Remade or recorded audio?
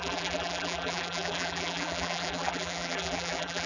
remade